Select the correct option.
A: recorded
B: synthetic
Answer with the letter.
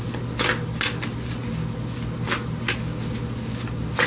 A